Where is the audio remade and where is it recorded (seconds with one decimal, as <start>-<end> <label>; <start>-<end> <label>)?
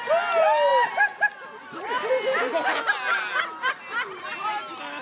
0.0-5.0 recorded